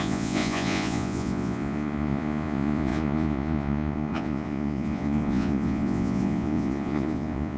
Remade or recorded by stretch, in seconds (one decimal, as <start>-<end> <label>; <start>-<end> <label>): 0.0-7.6 remade